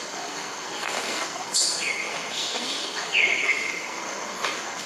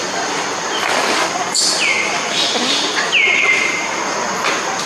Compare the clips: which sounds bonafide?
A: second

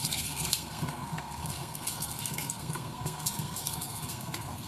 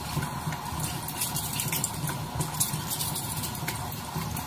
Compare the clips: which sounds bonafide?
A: second